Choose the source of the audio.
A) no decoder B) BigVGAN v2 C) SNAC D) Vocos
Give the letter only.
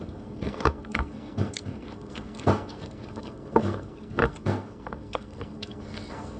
C